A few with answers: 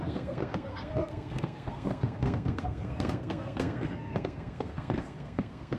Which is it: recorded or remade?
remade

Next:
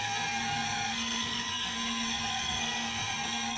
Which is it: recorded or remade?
remade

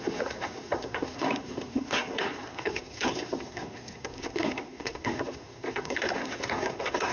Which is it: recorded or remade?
remade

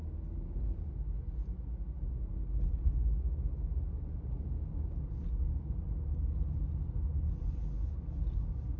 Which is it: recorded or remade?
recorded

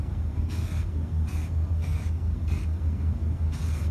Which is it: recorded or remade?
remade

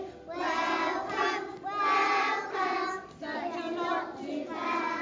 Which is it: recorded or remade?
recorded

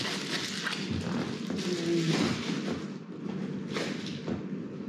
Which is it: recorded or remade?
recorded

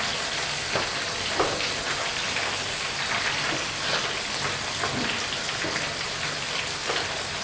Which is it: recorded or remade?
recorded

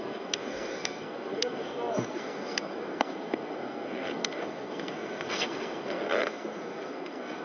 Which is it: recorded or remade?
remade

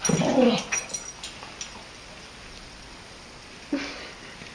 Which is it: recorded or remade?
recorded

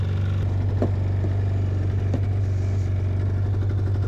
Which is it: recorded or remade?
recorded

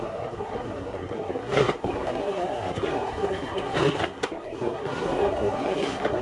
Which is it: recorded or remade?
remade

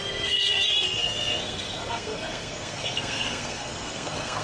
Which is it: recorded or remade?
remade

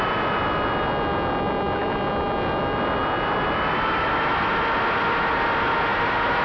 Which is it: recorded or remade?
recorded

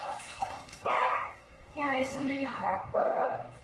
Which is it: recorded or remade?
remade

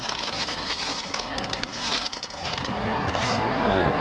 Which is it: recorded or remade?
remade